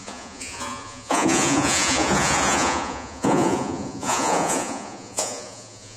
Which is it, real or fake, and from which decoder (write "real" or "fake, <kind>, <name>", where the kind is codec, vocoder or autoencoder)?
fake, vocoder, Vocos